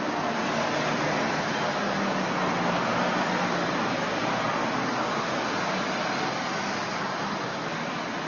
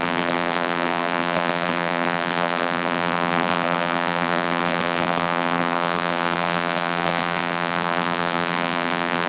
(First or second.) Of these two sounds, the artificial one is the second